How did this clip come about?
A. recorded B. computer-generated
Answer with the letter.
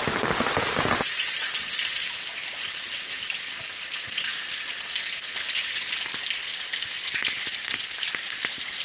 A